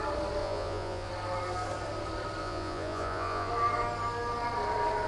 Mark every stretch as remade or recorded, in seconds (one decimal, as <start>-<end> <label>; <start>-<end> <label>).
0.0-0.4 recorded; 0.4-1.1 remade; 1.1-2.4 recorded; 2.4-3.5 remade; 3.5-5.1 recorded

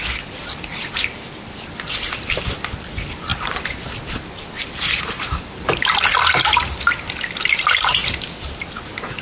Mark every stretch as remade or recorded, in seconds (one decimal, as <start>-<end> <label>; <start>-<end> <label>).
0.0-9.2 recorded

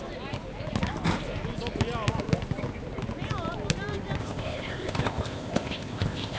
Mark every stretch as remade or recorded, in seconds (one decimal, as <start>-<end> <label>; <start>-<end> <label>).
0.0-4.2 recorded; 4.2-6.4 remade

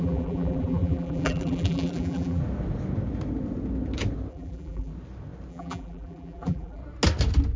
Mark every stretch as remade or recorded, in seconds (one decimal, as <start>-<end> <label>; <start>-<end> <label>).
0.0-2.4 remade; 2.4-4.3 recorded; 4.3-4.9 remade; 4.9-5.5 recorded; 5.5-6.8 remade; 6.8-7.6 recorded

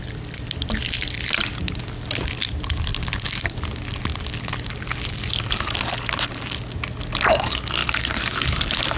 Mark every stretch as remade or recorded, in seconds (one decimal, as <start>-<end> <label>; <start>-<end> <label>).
0.0-7.8 recorded; 7.8-9.0 remade

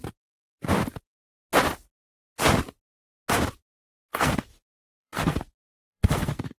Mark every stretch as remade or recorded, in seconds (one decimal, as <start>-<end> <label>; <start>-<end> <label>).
0.0-4.1 recorded; 4.1-6.6 remade

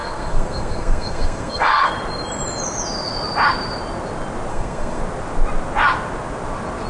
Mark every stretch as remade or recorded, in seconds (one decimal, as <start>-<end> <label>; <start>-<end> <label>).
0.0-1.9 remade; 1.9-4.5 recorded; 4.5-5.0 remade; 5.0-6.9 recorded